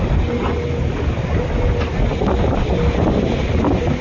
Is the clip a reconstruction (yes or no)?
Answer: no